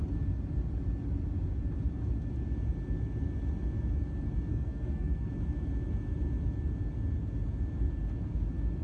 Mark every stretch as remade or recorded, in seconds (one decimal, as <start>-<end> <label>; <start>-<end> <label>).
0.0-4.5 recorded; 4.5-5.3 remade; 5.3-8.8 recorded